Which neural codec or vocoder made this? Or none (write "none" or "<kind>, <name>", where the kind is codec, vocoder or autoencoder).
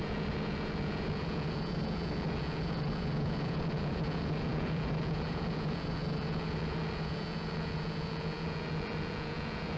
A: vocoder, Vocos